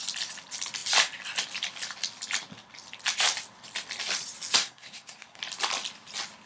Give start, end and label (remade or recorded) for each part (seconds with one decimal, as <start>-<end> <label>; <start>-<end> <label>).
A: 0.0-4.6 recorded; 4.6-5.4 remade; 5.4-6.5 recorded